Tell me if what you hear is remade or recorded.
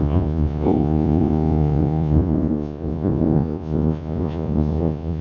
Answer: remade